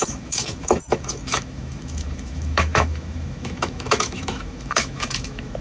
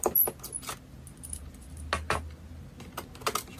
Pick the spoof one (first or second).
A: first